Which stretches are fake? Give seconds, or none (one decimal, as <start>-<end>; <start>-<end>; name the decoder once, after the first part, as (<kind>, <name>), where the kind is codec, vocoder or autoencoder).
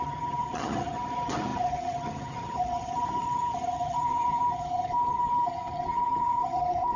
0.0-7.0 (vocoder, HiFi-GAN)